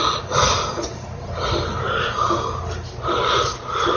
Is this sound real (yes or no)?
yes